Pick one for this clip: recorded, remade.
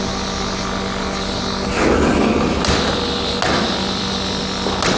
recorded